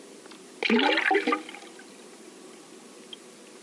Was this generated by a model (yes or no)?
no